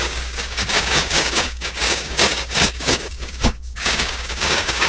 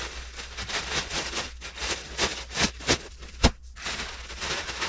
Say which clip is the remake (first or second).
first